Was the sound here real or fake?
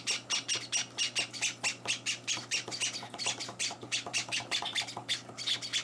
real